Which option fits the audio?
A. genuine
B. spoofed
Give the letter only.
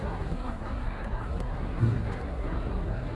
B